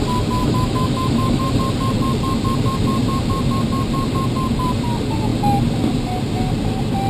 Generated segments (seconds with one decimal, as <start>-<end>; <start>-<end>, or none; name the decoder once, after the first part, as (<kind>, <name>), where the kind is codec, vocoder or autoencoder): 0.4-1.5 (autoencoder, DAC-VAE)

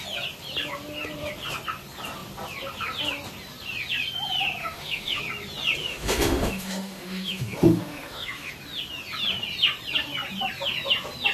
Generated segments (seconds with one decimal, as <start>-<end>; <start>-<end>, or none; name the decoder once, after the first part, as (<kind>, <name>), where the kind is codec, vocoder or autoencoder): 4.6-5.2 (autoencoder, DAC-VAE); 5.8-8.5

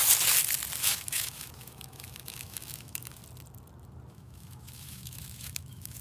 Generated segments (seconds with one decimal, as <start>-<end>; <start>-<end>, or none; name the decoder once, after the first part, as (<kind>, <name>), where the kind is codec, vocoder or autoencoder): 0.8-3.2 (autoencoder, DAC-VAE); 4.1-6.0

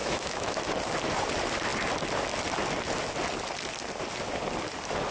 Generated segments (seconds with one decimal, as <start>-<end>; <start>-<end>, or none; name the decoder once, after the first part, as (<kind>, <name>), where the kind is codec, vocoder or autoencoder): 0.0-0.6 (autoencoder, DAC-VAE)

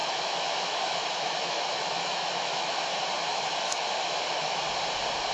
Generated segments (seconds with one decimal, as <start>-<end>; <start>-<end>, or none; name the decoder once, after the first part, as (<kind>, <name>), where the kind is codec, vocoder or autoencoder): 0.0-2.9 (autoencoder, DAC-VAE); 3.3-4.6

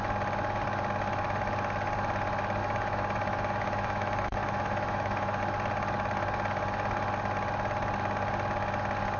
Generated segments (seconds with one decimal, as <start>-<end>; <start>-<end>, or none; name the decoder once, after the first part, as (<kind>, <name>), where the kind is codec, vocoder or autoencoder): 2.6-5.4 (autoencoder, DAC-VAE)

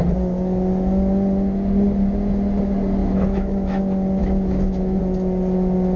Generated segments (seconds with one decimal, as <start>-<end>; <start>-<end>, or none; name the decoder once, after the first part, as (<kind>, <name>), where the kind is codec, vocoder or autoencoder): 3.0-3.8 (autoencoder, DAC-VAE); 4.2-5.0